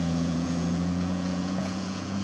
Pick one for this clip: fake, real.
fake